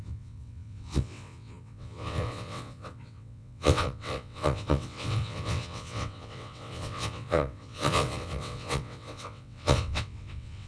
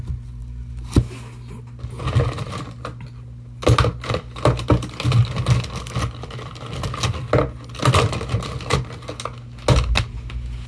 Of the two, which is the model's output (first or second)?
first